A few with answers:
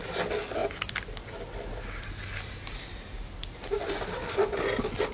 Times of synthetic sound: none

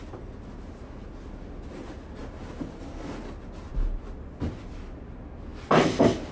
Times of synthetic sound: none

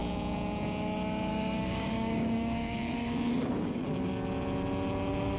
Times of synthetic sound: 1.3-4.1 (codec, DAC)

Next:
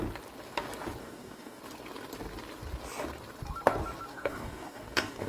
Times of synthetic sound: 1.0-1.6 (codec, DAC); 4.1-5.3